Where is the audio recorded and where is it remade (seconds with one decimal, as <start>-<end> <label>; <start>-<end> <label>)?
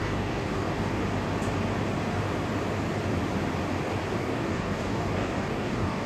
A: 0.0-1.0 remade; 1.0-4.2 recorded; 4.2-6.1 remade